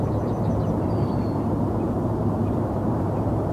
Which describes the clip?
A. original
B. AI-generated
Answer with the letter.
B